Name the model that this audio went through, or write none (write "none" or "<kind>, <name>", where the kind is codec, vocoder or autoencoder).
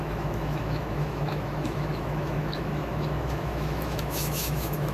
autoencoder, DAC-VAE